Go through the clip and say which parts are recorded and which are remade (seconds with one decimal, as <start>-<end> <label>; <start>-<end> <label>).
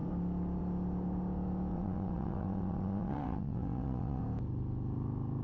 0.0-1.7 recorded; 1.7-4.2 remade; 4.2-5.4 recorded